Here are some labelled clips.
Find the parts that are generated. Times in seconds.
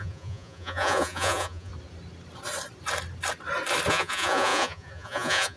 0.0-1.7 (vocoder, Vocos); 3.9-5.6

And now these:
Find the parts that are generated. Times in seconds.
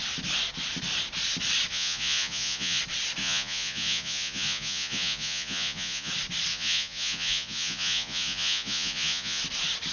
1.7-2.8 (vocoder, Vocos); 3.2-6.1; 6.5-9.4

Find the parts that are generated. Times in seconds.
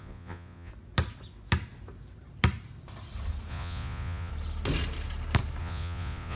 0.0-0.7 (vocoder, Vocos); 3.5-4.3; 5.6-6.4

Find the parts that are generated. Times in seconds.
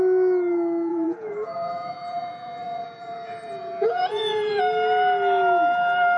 0.9-4.6 (vocoder, Vocos)